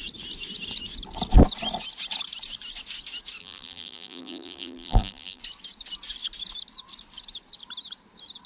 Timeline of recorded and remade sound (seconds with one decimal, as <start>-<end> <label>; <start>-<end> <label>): 0.0-3.4 recorded; 3.4-5.4 remade; 5.4-8.5 recorded